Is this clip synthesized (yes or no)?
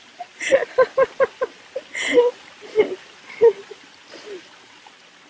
no